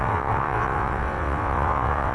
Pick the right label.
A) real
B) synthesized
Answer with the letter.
B